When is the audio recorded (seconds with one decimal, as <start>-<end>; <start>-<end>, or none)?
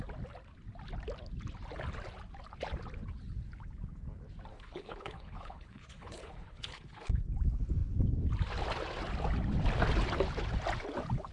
0.0-4.5; 7.2-11.3